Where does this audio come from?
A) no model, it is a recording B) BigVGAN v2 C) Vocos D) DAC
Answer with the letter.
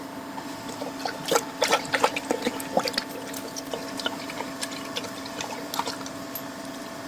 A